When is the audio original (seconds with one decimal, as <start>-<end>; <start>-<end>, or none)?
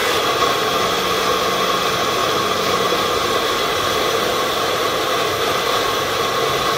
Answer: 1.2-2.2; 6.2-6.8